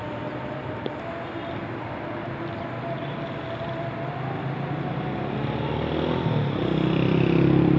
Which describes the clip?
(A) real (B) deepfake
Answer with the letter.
A